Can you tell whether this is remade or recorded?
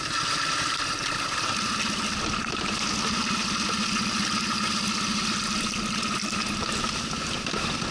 recorded